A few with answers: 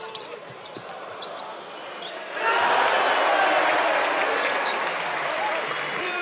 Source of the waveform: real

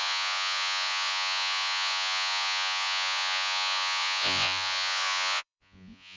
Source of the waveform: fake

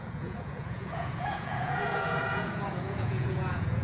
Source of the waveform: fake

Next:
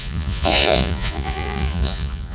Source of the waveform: fake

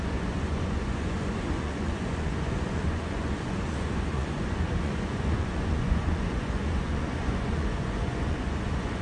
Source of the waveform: fake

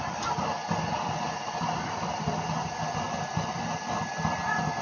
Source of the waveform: real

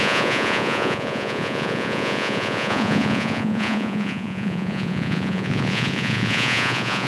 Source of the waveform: fake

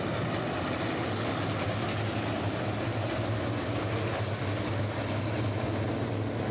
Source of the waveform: real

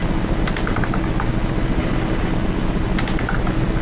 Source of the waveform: real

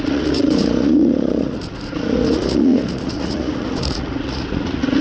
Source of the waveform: fake